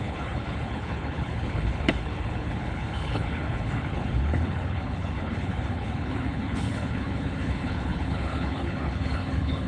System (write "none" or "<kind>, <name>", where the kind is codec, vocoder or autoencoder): codec, HILCodec